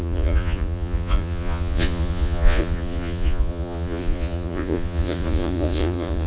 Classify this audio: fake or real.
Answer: fake